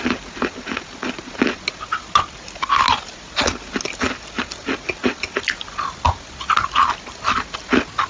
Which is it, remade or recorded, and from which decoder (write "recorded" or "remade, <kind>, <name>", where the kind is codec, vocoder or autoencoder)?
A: recorded